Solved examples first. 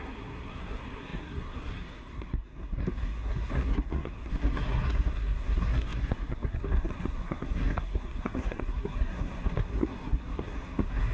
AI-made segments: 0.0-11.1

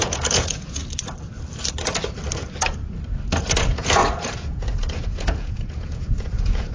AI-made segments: 0.0-0.8; 3.6-6.7

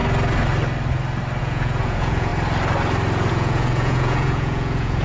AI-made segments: 1.4-2.3; 3.3-5.0